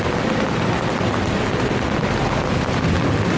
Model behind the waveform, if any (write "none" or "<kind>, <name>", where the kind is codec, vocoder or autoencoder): none